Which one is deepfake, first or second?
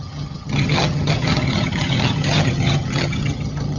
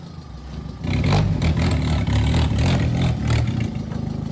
first